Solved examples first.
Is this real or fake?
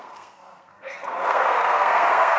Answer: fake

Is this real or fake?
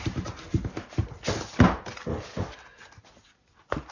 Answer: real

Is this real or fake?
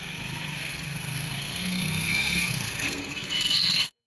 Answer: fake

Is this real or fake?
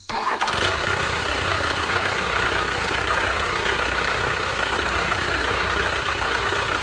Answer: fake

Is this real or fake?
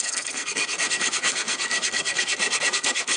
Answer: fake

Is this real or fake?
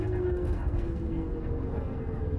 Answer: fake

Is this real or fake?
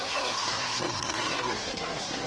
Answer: fake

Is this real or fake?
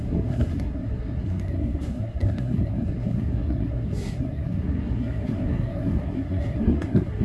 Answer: fake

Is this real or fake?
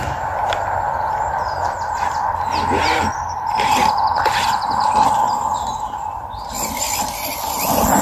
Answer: real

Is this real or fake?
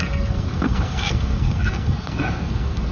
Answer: fake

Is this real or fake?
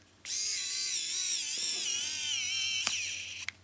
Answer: real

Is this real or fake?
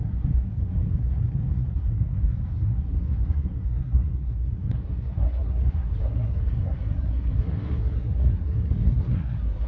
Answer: fake